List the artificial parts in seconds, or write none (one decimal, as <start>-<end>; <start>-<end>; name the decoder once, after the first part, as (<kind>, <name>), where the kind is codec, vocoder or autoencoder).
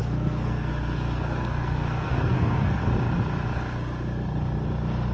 0.0-2.8 (codec, SNAC)